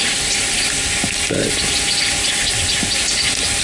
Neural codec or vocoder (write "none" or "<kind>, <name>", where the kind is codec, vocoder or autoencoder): none